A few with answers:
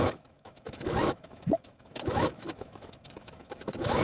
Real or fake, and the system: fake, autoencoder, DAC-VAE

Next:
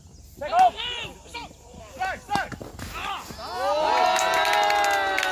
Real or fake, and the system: real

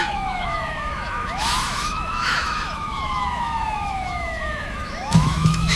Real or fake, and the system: fake, autoencoder, DAC-VAE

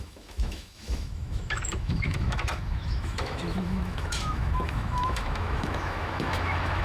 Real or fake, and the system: fake, autoencoder, DAC-VAE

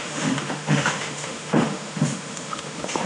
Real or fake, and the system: fake, autoencoder, DAC-VAE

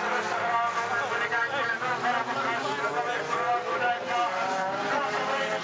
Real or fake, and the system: real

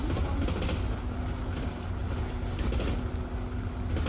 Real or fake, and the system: real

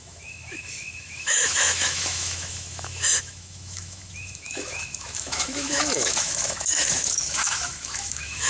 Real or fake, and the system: fake, autoencoder, DAC-VAE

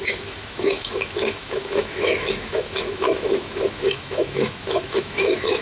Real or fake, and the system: fake, autoencoder, DAC-VAE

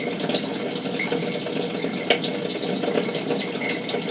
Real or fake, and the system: real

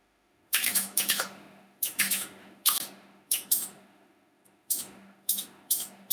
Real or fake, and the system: fake, autoencoder, DAC-VAE